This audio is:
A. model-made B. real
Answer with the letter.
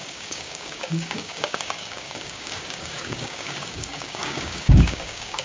A